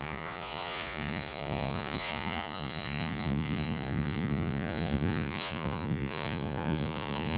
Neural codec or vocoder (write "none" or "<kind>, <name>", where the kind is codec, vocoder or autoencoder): vocoder, Vocos